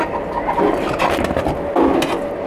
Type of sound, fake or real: real